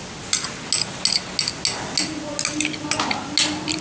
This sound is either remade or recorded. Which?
recorded